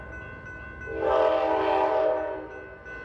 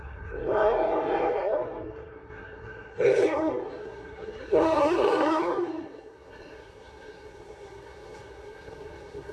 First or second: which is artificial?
second